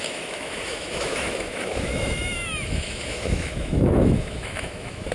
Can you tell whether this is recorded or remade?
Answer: remade